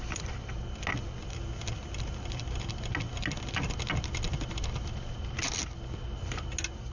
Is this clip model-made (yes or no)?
no